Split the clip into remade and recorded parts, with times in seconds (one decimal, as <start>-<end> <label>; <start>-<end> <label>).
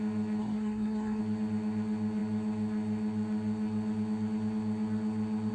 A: 0.0-0.4 recorded; 0.4-1.2 remade; 1.2-5.5 recorded